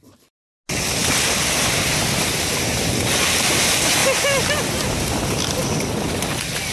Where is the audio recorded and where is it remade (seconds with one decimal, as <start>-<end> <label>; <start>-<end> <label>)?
0.0-6.7 recorded